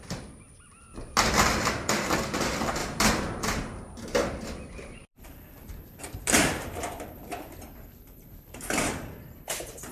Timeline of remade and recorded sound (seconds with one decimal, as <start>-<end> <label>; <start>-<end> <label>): 0.0-2.8 recorded; 2.8-3.9 remade; 3.9-5.0 recorded; 5.0-9.9 remade